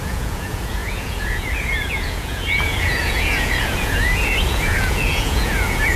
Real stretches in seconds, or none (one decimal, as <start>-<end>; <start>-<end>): none